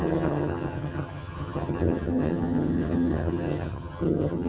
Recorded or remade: remade